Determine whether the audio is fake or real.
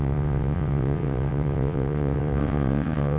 fake